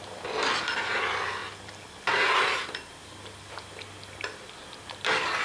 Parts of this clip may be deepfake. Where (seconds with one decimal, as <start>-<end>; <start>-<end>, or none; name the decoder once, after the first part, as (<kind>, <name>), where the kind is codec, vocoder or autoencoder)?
none